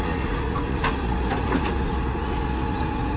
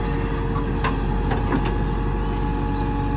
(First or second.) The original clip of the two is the second